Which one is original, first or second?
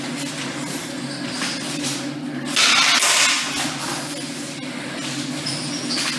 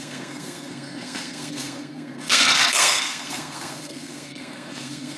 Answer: first